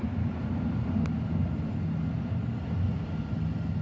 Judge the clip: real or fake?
real